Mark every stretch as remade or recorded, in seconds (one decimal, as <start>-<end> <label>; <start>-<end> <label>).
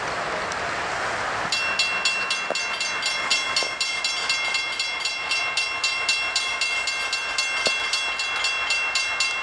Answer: 0.0-9.4 recorded